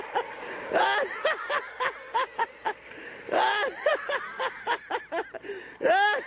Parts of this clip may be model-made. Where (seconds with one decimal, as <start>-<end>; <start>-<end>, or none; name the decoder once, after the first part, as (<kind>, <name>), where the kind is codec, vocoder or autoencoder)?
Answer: none